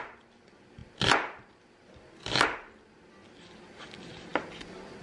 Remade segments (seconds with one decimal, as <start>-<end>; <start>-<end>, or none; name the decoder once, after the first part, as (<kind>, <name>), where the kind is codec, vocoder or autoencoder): none